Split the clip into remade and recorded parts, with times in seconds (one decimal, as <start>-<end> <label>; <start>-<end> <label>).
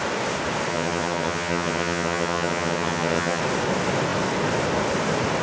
0.0-0.7 recorded; 0.7-3.4 remade; 3.4-5.4 recorded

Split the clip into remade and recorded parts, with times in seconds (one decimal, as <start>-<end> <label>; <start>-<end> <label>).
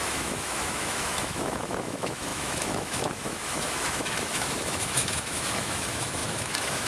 0.0-6.9 remade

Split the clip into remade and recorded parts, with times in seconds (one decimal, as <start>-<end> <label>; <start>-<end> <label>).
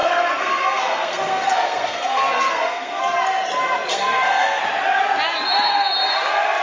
0.0-3.0 remade; 3.0-3.9 recorded; 3.9-4.6 remade; 4.6-6.6 recorded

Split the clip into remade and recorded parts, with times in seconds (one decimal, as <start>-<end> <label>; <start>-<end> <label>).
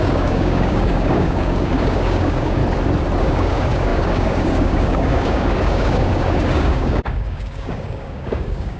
0.0-2.6 remade; 2.6-3.2 recorded; 3.2-8.8 remade